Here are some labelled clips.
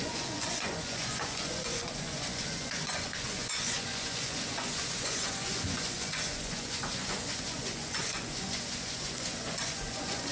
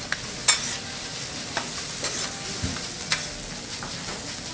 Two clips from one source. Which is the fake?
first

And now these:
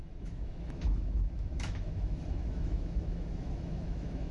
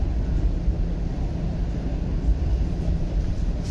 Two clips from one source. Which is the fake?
first